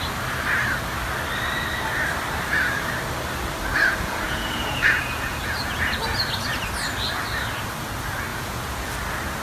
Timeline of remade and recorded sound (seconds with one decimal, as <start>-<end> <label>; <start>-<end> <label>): 0.0-3.7 recorded; 3.7-6.3 remade; 6.3-8.3 recorded; 8.3-8.9 remade; 8.9-9.4 recorded